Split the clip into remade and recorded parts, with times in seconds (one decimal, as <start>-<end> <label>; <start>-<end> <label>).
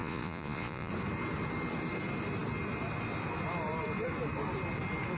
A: 0.0-0.9 remade; 0.9-5.2 recorded